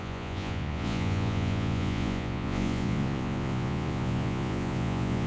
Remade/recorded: remade